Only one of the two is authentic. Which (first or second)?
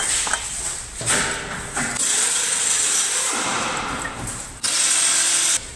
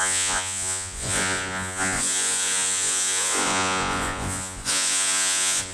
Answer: first